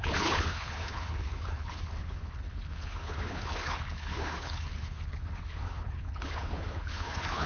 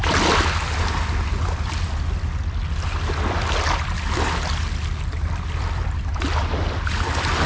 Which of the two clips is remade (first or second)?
first